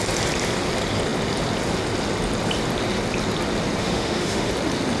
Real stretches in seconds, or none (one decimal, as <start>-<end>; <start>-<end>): 0.0-3.8; 4.5-5.0